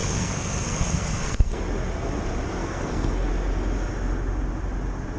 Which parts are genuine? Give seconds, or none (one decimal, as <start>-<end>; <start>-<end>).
1.6-2.6; 3.3-5.2